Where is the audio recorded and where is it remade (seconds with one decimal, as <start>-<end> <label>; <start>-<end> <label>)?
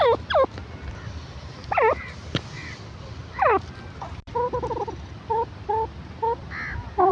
0.0-7.1 recorded